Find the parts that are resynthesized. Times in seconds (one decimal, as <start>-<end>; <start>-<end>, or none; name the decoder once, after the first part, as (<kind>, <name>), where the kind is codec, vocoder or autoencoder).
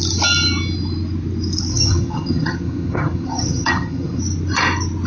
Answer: 1.7-4.2 (vocoder, HiFi-GAN)